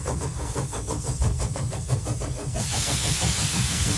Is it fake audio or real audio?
fake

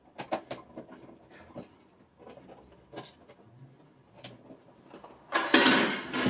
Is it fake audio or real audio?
real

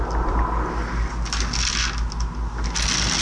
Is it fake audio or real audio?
real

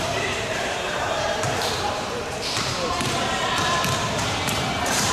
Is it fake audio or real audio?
fake